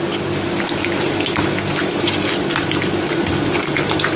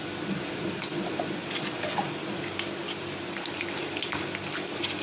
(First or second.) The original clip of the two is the first